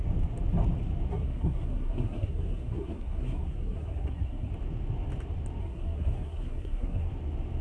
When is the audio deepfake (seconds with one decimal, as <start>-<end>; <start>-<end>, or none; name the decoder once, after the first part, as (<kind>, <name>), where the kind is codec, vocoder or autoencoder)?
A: 1.1-4.5 (codec, SNAC); 5.6-7.1